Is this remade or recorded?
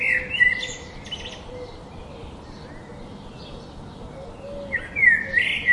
recorded